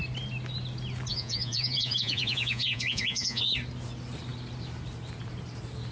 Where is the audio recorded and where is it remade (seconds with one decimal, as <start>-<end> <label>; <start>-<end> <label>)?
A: 0.0-1.1 recorded; 1.1-3.4 remade; 3.4-5.9 recorded